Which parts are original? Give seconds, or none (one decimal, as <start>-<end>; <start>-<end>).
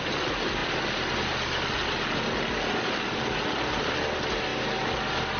0.0-5.4